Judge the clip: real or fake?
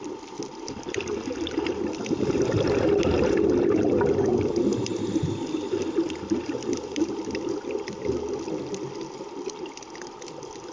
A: real